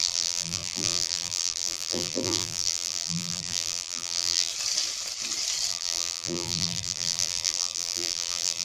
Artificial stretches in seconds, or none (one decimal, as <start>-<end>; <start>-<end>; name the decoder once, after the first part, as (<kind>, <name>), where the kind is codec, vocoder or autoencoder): 0.0-4.5 (vocoder, BigVGAN v2); 5.7-8.6